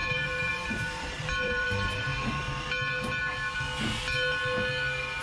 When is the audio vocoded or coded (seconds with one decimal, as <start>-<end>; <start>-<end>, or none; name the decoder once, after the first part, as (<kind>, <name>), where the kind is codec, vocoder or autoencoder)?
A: 0.0-2.1 (vocoder, BigVGAN v2)